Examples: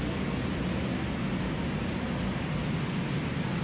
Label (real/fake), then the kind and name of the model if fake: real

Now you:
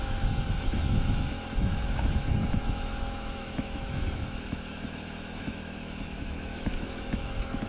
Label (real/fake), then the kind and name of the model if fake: fake, autoencoder, DAC-VAE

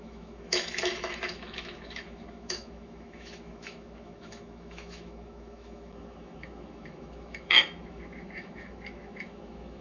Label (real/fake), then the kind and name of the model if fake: fake, autoencoder, DAC-VAE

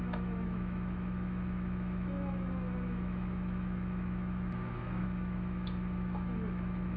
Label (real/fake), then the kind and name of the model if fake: fake, autoencoder, DAC-VAE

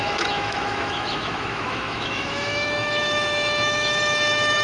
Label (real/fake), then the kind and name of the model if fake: fake, autoencoder, DAC-VAE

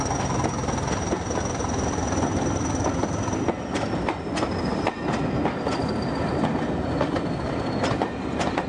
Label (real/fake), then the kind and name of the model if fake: real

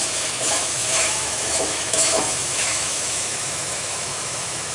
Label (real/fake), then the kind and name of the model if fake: fake, autoencoder, DAC-VAE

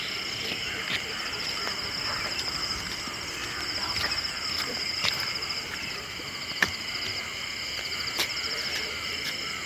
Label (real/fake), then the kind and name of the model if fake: real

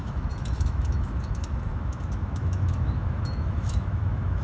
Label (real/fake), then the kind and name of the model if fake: fake, autoencoder, DAC-VAE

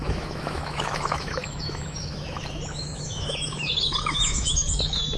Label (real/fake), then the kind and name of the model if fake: fake, autoencoder, DAC-VAE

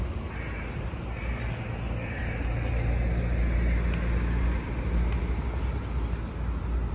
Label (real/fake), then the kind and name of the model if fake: real